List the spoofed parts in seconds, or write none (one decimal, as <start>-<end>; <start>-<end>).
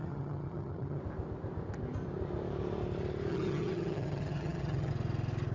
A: 0.0-1.0; 3.3-4.9